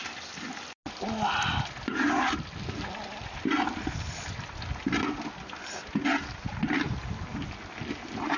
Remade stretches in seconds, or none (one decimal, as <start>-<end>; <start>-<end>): none